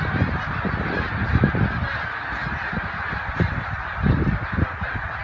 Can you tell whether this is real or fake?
real